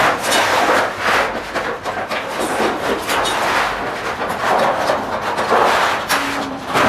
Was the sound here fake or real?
real